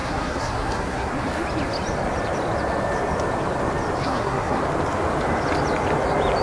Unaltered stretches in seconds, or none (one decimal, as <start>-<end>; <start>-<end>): 1.1-4.0; 4.6-6.4